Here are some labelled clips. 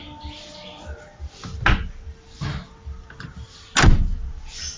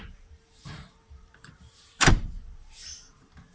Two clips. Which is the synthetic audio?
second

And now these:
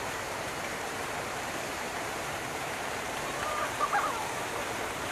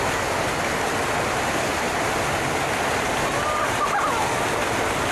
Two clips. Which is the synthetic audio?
first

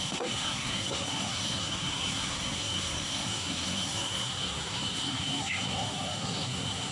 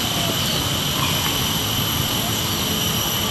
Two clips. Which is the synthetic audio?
first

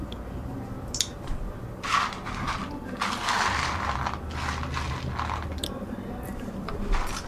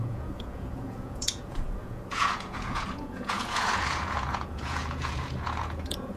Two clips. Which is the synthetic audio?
second